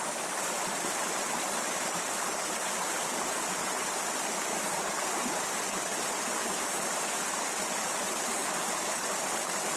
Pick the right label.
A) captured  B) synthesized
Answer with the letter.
A